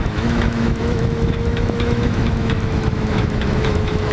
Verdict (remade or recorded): remade